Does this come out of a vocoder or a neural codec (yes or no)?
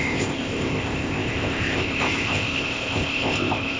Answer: yes